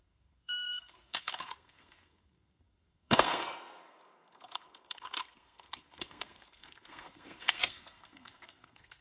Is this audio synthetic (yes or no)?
yes